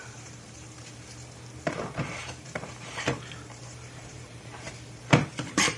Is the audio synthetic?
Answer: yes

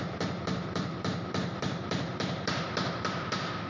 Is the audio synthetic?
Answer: yes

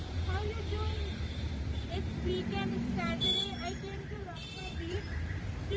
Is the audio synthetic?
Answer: yes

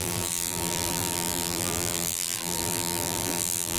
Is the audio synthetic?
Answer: yes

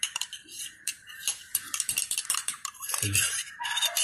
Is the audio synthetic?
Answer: yes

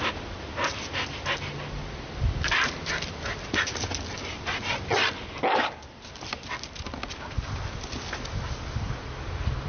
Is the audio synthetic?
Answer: no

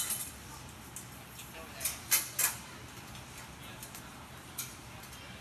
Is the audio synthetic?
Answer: no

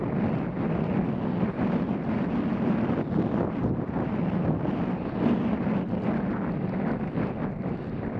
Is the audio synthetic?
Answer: no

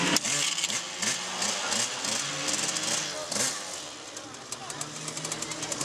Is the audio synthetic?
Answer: no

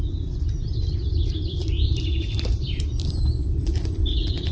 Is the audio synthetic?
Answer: yes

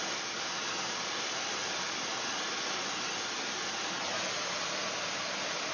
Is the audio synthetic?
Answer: yes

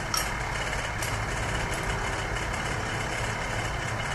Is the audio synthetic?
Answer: no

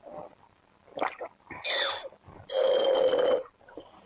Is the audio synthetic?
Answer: yes